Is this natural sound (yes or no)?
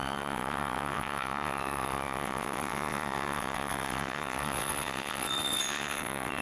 no